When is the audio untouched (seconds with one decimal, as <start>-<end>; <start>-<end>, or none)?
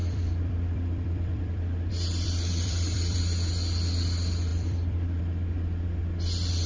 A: 3.2-4.5; 5.2-6.7